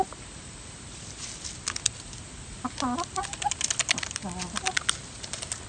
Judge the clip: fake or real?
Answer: real